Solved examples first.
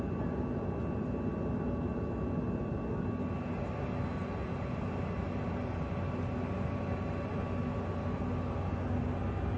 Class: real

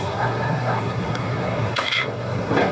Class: fake